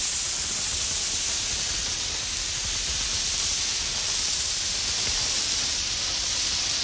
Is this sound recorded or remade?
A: recorded